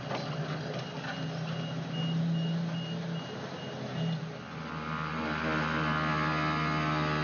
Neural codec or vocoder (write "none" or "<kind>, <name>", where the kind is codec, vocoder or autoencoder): none